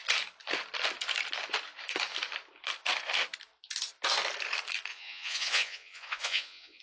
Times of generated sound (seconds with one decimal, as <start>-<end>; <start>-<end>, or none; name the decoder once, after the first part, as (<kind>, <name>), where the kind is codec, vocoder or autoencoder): 4.9-6.8 (vocoder, Vocos)